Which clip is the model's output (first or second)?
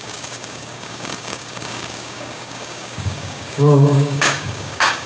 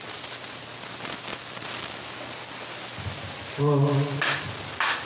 first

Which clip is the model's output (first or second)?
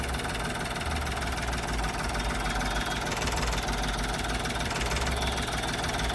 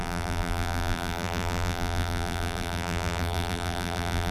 second